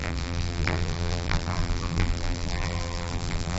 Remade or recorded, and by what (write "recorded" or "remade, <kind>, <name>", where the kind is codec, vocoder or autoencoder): remade, vocoder, BigVGAN v2